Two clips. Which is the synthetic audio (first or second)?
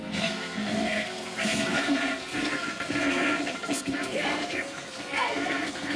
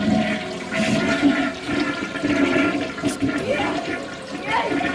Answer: first